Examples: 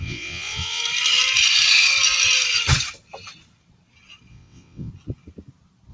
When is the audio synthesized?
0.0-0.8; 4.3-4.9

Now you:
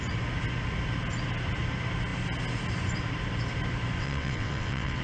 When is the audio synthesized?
4.0-5.0